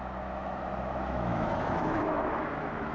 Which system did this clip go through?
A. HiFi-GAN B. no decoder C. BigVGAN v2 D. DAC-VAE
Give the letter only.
D